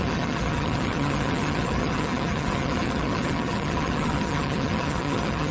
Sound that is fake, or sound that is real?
fake